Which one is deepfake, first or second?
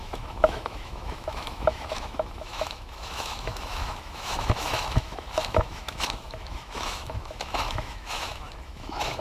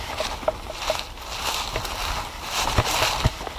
first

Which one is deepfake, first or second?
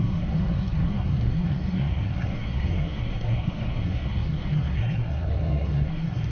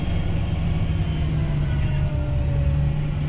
first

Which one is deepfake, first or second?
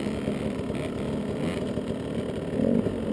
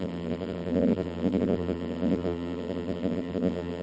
second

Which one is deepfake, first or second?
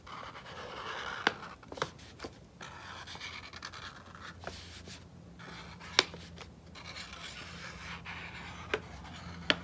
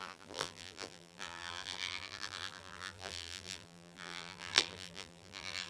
second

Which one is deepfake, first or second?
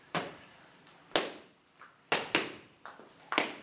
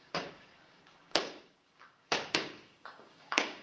second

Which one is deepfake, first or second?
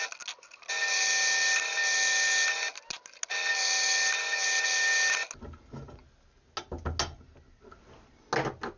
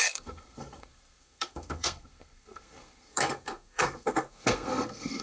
second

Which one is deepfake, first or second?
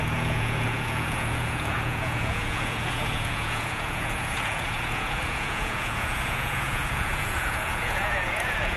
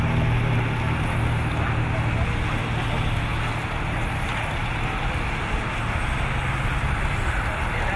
first